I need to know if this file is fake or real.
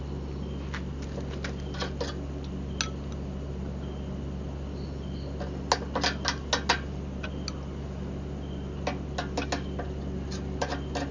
real